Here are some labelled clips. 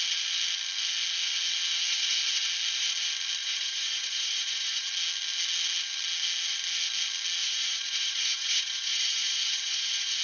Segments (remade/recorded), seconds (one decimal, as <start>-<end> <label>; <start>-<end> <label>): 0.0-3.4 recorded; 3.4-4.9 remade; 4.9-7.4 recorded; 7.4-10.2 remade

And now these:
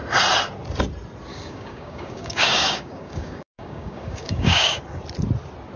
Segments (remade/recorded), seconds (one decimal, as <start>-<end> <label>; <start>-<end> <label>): 0.0-1.3 recorded; 1.3-4.8 remade; 4.8-5.8 recorded

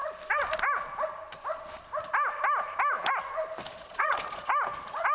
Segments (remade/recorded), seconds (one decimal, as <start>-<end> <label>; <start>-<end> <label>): 0.0-3.7 recorded; 3.7-4.5 remade; 4.5-5.1 recorded

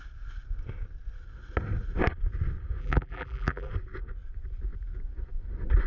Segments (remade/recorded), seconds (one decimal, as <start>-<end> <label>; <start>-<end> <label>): 0.0-2.8 recorded; 2.8-3.7 remade; 3.7-5.9 recorded

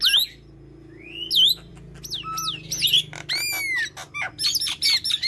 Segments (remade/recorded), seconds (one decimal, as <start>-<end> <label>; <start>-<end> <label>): 0.0-5.3 recorded

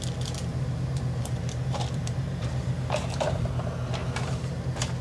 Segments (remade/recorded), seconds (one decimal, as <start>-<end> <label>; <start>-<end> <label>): 0.0-0.5 recorded; 0.5-3.5 remade; 3.5-4.0 recorded; 4.0-4.5 remade; 4.5-5.0 recorded

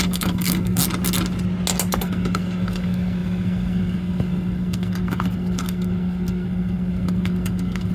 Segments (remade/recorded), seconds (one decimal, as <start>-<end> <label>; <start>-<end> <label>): 0.0-0.8 remade; 0.8-1.9 recorded; 1.9-7.9 remade

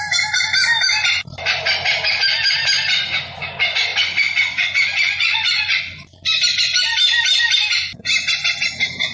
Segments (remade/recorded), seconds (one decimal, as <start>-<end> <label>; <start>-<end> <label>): 0.0-3.9 recorded; 3.9-5.8 remade; 5.8-9.1 recorded